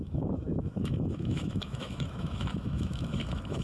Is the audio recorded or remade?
remade